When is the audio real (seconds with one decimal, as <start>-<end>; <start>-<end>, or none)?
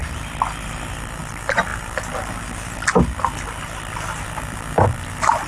0.0-5.5